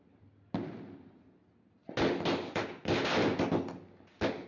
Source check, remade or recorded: recorded